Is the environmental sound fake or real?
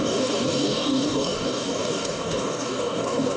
fake